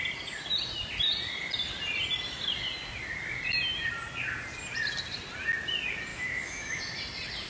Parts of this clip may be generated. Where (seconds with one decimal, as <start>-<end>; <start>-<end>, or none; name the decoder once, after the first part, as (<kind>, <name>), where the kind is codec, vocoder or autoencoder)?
6.1-6.8 (autoencoder, DAC-VAE)